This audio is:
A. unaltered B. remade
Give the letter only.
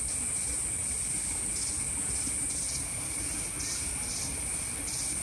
A